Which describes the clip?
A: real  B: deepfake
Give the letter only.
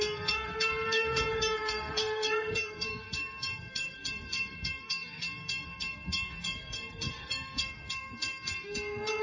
B